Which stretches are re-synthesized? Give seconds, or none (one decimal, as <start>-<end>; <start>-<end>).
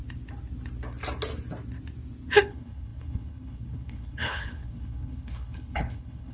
2.5-6.3